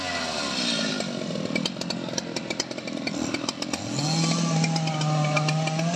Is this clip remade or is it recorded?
recorded